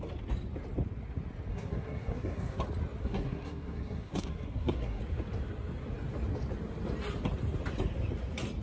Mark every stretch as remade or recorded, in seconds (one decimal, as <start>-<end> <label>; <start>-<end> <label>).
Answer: 0.0-1.5 recorded; 1.5-2.6 remade; 2.6-3.0 recorded; 3.0-5.0 remade; 5.0-8.6 recorded

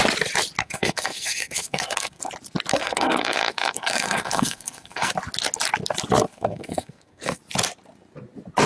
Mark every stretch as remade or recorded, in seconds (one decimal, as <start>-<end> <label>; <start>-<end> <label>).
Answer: 0.0-0.6 recorded; 0.6-2.3 remade; 2.3-2.7 recorded; 2.7-5.1 remade; 5.1-6.3 recorded; 6.3-7.4 remade; 7.4-8.7 recorded